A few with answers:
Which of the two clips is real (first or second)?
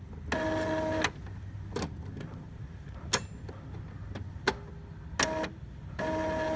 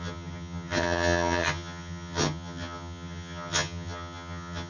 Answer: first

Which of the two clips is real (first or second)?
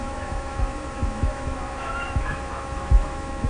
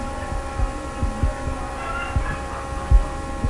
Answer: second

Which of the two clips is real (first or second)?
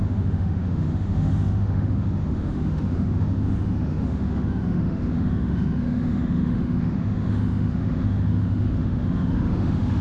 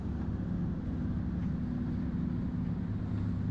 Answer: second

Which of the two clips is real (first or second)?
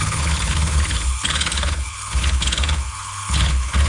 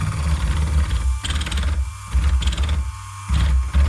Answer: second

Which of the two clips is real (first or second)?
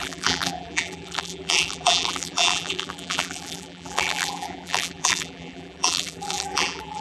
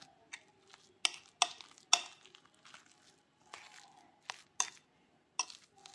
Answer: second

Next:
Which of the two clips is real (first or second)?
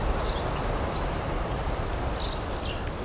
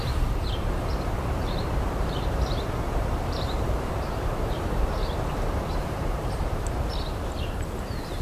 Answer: first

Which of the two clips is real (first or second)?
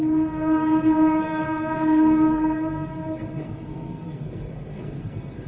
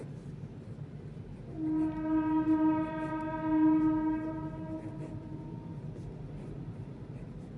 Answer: second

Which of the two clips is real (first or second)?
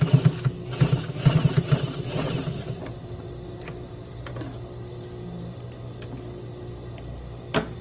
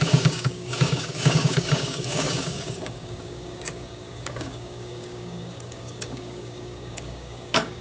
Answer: first